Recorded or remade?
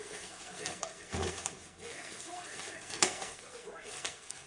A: remade